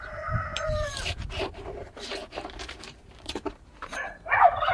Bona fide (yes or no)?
no